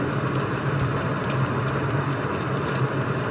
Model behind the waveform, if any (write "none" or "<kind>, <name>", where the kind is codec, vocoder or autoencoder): none